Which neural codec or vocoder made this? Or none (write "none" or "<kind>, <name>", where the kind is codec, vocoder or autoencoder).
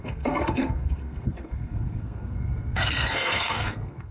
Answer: codec, SNAC